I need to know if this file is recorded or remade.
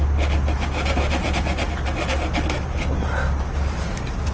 recorded